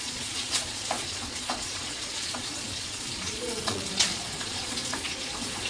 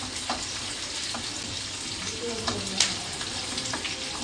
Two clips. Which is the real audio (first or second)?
second